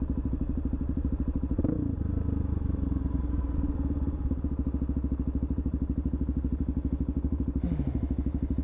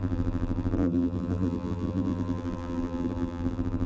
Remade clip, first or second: second